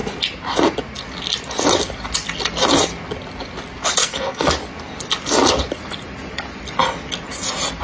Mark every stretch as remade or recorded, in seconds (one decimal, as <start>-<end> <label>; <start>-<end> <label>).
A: 0.0-4.0 recorded; 4.0-4.5 remade; 4.5-7.8 recorded